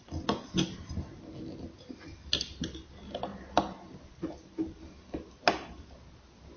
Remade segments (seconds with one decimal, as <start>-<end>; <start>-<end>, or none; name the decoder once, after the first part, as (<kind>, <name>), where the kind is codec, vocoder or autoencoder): none

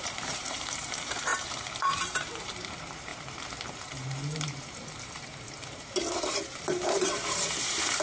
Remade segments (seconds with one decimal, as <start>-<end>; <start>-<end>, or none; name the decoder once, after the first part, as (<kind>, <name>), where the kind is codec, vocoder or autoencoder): 0.0-8.0 (vocoder, BigVGAN v2)

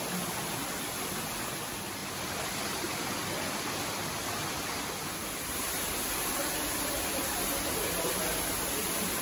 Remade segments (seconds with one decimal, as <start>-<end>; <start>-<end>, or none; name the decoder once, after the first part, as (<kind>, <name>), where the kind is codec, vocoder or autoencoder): 2.0-2.9 (vocoder, BigVGAN v2); 5.2-8.2

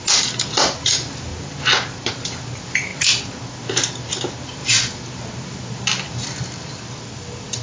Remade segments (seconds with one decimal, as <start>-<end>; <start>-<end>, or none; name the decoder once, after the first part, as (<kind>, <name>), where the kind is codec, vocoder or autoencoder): none

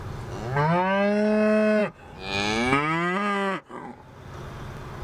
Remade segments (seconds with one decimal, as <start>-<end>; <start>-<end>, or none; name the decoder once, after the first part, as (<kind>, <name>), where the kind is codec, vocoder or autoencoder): none

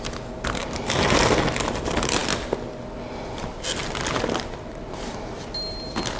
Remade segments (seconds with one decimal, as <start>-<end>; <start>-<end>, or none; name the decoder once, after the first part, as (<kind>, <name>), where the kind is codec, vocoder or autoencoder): 3.8-5.0 (vocoder, BigVGAN v2)

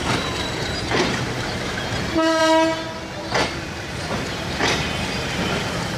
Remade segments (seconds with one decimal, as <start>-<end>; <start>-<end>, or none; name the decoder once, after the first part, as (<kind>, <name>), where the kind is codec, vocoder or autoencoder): 0.0-2.4 (vocoder, BigVGAN v2); 3.9-6.0